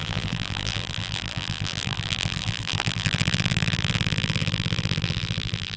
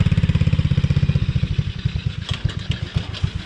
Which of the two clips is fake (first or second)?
first